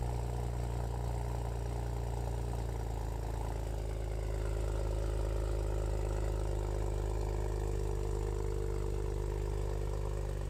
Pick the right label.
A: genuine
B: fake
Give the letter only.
A